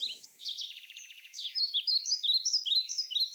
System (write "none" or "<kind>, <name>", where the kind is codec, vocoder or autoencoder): autoencoder, DAC-VAE